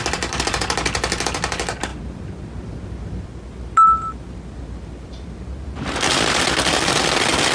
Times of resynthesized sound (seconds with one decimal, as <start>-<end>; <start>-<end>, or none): none